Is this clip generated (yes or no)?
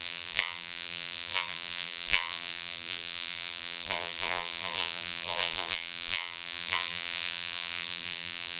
yes